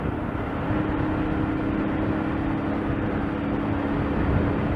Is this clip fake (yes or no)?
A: no